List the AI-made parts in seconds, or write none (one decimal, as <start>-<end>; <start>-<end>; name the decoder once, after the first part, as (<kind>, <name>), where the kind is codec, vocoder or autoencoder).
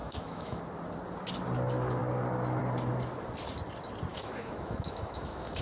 0.0-0.6 (autoencoder, DAC-VAE); 4.1-5.6